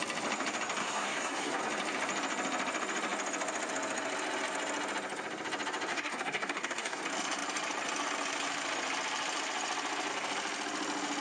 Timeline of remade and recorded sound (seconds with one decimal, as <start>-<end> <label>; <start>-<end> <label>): 0.0-0.8 recorded; 0.8-1.6 remade; 1.6-5.9 recorded; 5.9-7.0 remade; 7.0-11.2 recorded